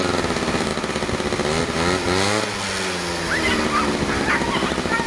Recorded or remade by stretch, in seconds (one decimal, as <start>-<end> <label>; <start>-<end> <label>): 0.0-5.1 recorded